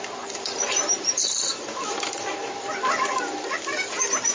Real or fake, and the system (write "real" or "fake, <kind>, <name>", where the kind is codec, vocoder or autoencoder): fake, vocoder, BigVGAN v2